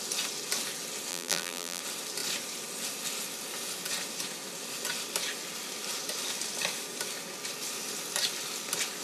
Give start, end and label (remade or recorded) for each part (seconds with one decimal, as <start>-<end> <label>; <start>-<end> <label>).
0.0-1.1 recorded; 1.1-1.8 remade; 1.8-9.0 recorded